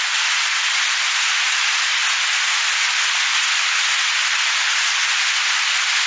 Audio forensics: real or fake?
real